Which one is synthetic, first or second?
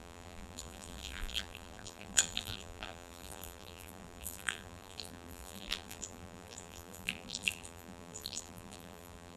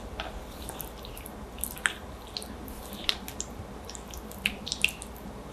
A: first